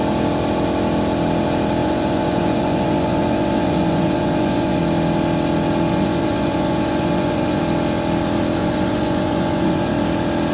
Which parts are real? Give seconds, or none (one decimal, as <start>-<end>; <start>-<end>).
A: 0.0-1.8; 4.8-5.9; 7.6-8.6; 9.9-10.5